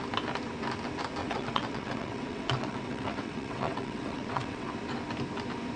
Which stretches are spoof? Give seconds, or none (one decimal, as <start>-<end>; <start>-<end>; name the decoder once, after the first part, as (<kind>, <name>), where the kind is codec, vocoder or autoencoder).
1.2-4.7 (vocoder, WaveNeXt)